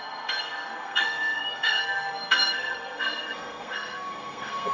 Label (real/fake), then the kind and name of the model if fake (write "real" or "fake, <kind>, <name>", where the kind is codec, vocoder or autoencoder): fake, codec, SNAC